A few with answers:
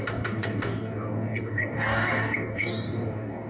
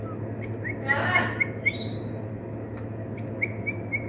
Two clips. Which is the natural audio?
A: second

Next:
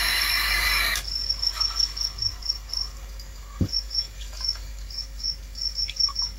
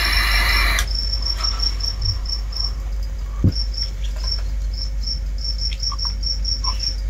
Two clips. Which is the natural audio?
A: second